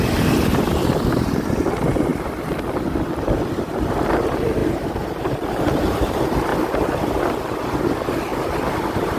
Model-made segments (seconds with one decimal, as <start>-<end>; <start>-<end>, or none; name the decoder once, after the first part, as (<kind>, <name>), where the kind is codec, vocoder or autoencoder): 0.0-2.1 (vocoder, BigVGAN v2); 3.6-8.3

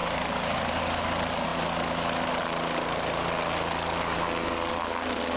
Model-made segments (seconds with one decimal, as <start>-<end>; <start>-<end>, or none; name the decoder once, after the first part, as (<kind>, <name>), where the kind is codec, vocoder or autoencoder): 0.0-0.7 (vocoder, BigVGAN v2)

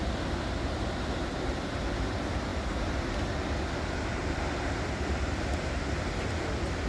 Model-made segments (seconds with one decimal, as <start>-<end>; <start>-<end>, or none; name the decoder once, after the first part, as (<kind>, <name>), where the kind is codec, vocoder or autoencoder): none